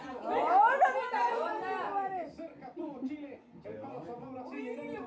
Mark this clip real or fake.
real